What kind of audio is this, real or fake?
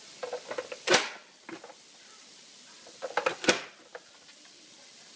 real